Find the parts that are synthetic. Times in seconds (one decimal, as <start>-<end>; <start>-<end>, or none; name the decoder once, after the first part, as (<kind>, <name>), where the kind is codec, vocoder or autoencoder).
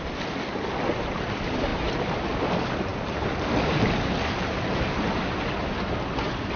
none